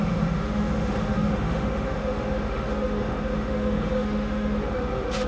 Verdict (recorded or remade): remade